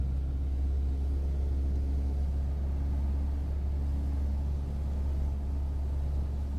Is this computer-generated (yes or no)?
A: no